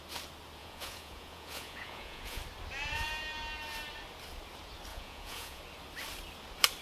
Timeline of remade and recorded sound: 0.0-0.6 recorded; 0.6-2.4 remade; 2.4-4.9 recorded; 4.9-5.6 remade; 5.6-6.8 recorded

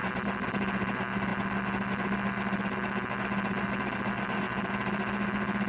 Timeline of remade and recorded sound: 0.0-5.7 recorded

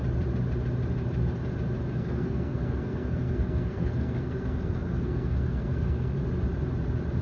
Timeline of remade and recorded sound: 0.0-1.9 recorded; 1.9-6.2 remade; 6.2-7.2 recorded

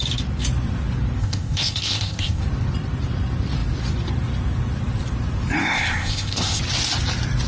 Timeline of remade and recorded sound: 0.0-1.2 recorded; 1.2-2.4 remade; 2.4-5.6 recorded; 5.6-6.6 remade; 6.6-7.5 recorded

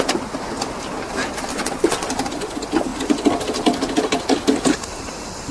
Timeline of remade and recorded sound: 0.0-1.5 recorded; 1.5-2.1 remade; 2.1-5.5 recorded

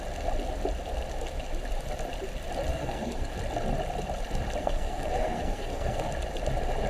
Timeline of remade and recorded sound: 0.0-2.7 recorded; 2.7-3.3 remade; 3.3-4.6 recorded; 4.6-6.1 remade; 6.1-6.9 recorded

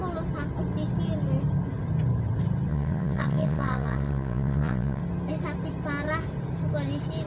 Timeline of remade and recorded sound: 0.0-2.7 recorded; 2.7-5.0 remade; 5.0-7.3 recorded

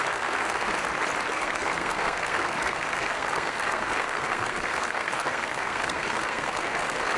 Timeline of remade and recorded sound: 0.0-0.7 remade; 0.7-1.3 recorded; 1.3-7.2 remade